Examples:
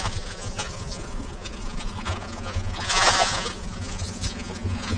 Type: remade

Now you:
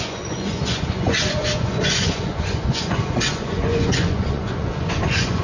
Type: remade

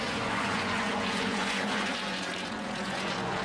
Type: remade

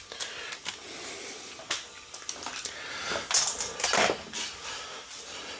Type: recorded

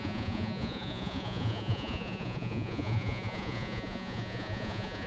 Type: remade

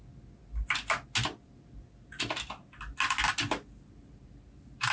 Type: recorded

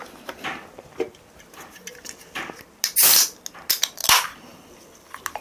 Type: recorded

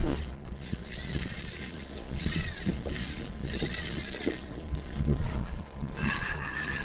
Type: remade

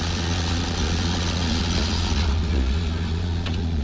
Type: remade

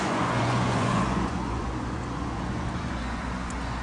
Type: remade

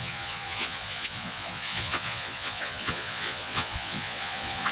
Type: remade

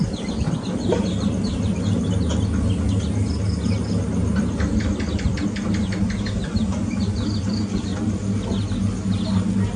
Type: recorded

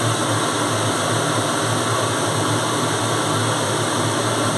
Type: recorded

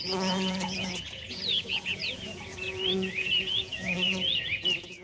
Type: remade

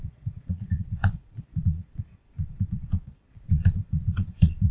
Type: remade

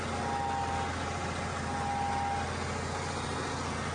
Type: recorded